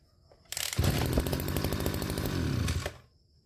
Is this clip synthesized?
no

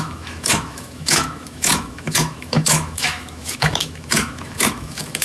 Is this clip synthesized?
yes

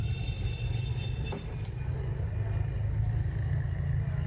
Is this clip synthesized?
no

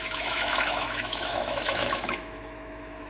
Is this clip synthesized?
yes